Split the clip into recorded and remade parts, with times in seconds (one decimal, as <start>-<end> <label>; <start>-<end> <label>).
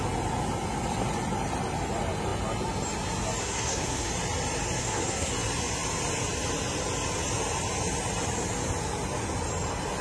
0.0-3.4 recorded; 3.4-4.1 remade; 4.1-4.8 recorded; 4.8-5.3 remade; 5.3-10.0 recorded